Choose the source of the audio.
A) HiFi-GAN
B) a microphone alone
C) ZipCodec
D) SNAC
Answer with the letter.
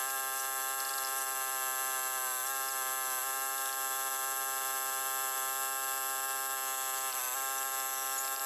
B